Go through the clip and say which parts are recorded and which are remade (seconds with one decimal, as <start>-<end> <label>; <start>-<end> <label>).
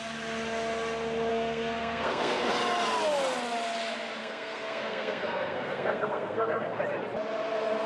0.0-1.3 recorded; 1.3-2.5 remade; 2.5-4.2 recorded; 4.2-6.8 remade; 6.8-7.9 recorded